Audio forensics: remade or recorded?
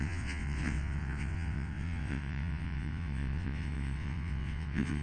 remade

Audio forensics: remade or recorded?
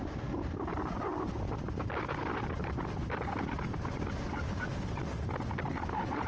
recorded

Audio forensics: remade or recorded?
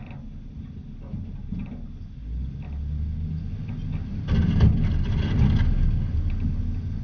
recorded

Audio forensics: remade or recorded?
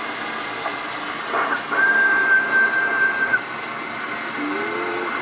recorded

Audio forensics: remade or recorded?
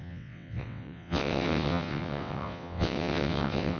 remade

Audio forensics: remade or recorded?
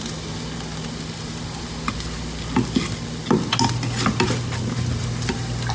recorded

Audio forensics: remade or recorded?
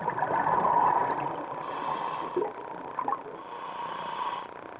recorded